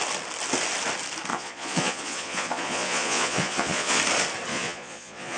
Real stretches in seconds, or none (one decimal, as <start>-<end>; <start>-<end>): 0.0-1.3; 4.0-4.5